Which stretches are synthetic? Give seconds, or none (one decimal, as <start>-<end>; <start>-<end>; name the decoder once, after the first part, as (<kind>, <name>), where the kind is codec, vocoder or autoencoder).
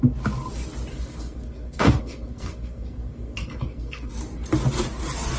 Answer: 0.9-4.1 (codec, SNAC)